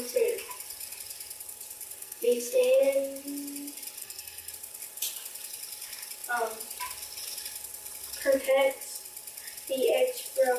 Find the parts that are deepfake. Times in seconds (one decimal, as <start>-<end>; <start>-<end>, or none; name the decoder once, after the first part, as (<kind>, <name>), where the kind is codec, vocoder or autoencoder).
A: 2.0-2.8 (codec, SNAC); 4.0-4.5